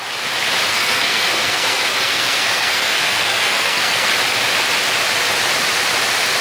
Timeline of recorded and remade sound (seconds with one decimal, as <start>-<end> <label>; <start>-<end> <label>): 0.0-0.7 recorded; 0.7-4.1 remade; 4.1-6.4 recorded